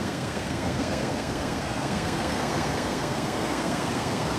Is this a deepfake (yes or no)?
yes